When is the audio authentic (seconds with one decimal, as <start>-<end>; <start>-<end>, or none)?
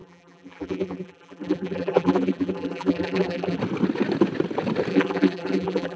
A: 3.6-4.9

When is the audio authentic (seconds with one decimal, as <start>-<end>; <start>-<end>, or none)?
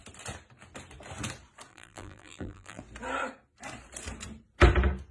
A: 0.0-1.7; 2.8-5.1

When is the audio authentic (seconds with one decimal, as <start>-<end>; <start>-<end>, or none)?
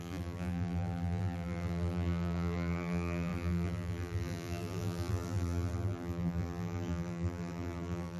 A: none